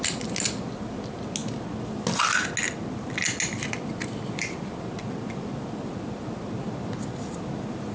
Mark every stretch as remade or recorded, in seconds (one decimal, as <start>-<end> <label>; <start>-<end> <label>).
0.0-7.9 recorded